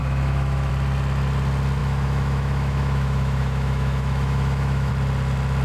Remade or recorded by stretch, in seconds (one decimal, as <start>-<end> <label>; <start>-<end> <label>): 0.0-0.7 remade; 0.7-1.8 recorded; 1.8-4.9 remade; 4.9-5.6 recorded